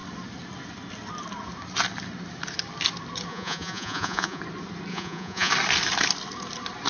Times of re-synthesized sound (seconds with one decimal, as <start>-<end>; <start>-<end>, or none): 3.3-4.4; 4.9-5.5